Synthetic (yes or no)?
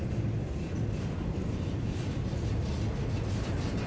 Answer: no